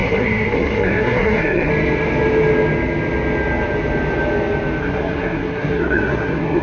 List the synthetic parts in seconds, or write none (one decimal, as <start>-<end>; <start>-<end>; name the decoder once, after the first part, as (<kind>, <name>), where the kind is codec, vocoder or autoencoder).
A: 0.0-1.7 (codec, SNAC); 4.8-6.6